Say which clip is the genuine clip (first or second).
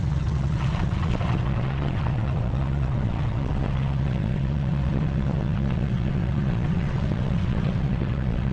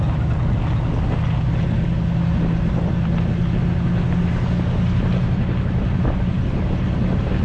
second